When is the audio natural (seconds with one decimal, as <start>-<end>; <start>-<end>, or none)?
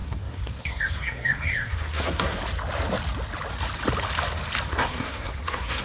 2.4-4.7